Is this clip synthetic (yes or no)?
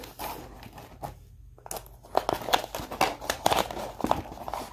no